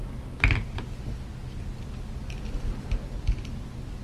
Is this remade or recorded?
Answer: recorded